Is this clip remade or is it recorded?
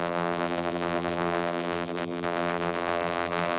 remade